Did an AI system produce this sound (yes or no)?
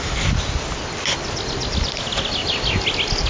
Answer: no